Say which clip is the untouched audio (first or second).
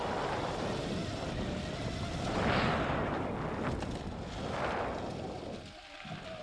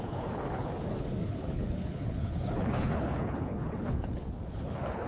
first